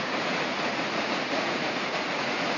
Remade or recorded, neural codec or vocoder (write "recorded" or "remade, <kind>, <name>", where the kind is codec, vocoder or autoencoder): remade, vocoder, Vocos